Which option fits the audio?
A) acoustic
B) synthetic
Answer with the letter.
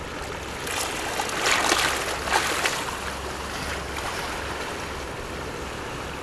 A